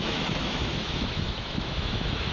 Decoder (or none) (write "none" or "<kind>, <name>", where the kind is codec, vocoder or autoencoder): autoencoder, DAC-VAE